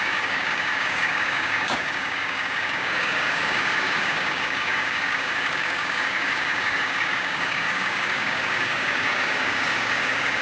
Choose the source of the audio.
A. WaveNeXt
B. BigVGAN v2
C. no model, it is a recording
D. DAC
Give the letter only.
D